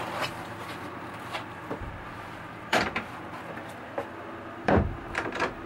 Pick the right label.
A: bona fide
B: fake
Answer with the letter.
B